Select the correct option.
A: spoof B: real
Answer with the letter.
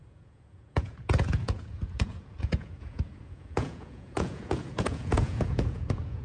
A